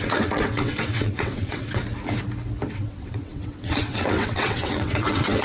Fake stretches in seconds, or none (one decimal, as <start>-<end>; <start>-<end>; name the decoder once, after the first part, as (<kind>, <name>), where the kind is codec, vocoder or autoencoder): 0.0-1.8 (vocoder, WaveNeXt); 2.7-5.4